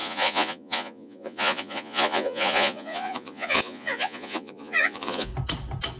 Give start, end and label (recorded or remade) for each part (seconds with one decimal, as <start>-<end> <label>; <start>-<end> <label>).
0.0-5.3 remade; 5.3-6.0 recorded